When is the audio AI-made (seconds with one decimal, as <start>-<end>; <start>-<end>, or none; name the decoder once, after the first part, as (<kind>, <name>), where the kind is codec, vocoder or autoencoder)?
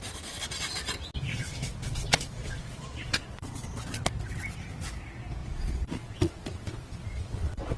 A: 1.3-3.9 (vocoder, Vocos); 5.4-7.8